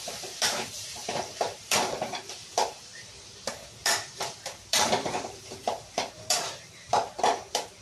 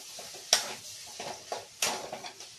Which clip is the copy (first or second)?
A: first